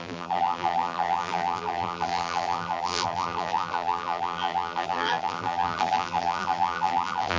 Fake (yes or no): yes